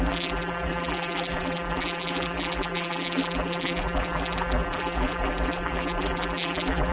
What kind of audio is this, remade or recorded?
remade